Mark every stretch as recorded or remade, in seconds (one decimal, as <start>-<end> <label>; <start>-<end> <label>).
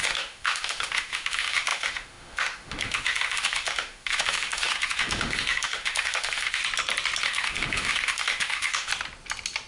0.0-6.6 remade; 6.6-7.2 recorded; 7.2-8.9 remade; 8.9-9.7 recorded